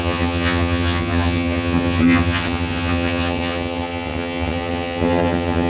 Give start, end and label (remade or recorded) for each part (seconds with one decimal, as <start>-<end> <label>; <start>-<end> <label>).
0.0-5.7 remade